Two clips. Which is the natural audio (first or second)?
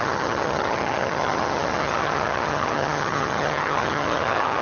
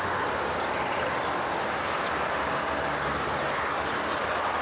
second